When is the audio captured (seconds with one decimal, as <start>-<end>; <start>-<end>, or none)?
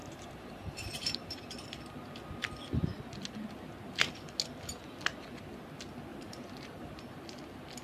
1.4-6.1; 7.0-7.8